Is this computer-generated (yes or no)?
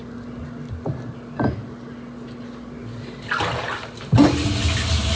no